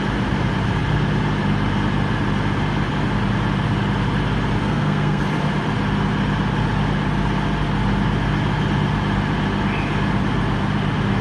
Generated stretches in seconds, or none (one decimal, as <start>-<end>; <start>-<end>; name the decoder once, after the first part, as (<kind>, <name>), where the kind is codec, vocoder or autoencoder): 4.6-5.2 (codec, SNAC)